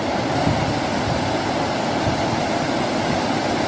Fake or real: real